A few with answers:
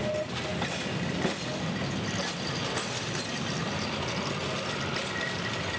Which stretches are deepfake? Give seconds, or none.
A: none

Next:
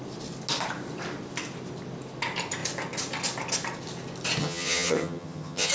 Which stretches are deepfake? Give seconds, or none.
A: 4.4-5.7 (vocoder, HiFi-GAN)

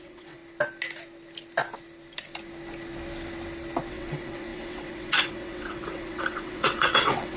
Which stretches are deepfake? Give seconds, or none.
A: 0.0-0.4 (vocoder, WaveNeXt); 3.9-7.4